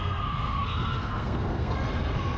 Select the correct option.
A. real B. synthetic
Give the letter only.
B